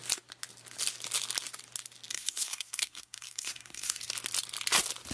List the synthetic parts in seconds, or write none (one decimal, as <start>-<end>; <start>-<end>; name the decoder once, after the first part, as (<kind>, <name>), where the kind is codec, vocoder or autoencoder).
2.1-4.0 (codec, SNAC)